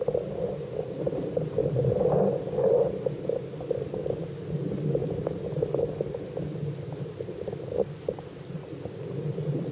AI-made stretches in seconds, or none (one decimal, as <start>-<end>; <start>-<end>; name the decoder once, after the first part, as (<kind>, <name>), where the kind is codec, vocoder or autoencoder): none